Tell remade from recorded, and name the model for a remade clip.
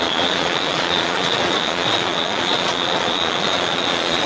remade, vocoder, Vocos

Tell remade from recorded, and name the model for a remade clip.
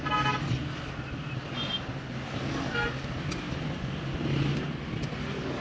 recorded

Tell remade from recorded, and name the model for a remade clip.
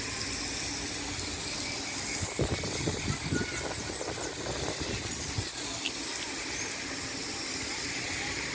recorded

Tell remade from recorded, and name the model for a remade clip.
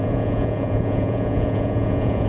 remade, vocoder, Vocos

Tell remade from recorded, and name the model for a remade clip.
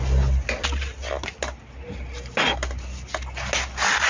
recorded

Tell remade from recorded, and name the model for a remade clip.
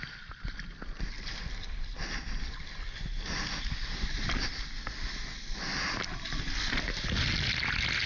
recorded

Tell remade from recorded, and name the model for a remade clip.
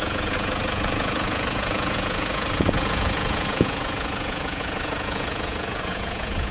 remade, vocoder, Vocos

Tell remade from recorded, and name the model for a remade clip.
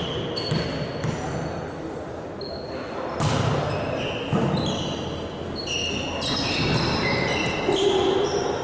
recorded